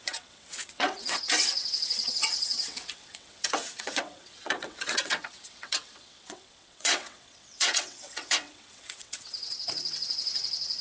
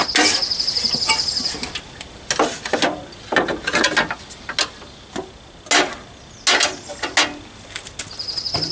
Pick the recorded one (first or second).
second